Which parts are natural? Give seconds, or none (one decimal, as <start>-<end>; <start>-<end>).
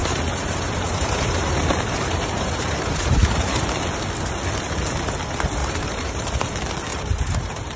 3.6-5.6; 6.3-6.9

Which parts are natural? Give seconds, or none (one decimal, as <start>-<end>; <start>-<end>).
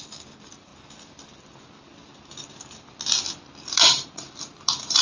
0.7-3.7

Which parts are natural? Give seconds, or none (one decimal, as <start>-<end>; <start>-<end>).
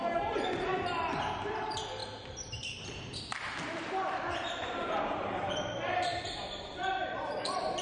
0.7-1.6; 2.0-4.2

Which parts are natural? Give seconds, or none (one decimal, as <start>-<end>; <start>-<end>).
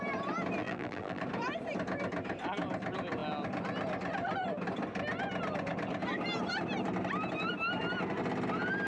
0.0-0.6; 1.2-8.9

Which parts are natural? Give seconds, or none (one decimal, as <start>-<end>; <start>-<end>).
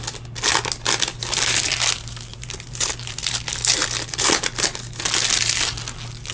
0.0-2.3; 3.3-6.3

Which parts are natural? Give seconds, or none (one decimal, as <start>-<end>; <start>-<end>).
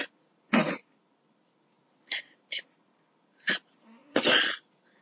none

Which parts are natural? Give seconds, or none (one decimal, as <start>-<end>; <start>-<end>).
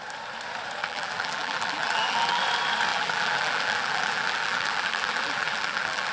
0.0-0.8; 2.4-2.9